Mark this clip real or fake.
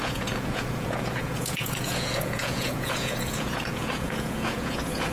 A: fake